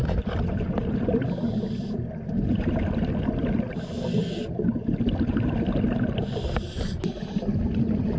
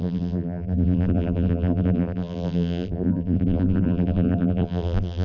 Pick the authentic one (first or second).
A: first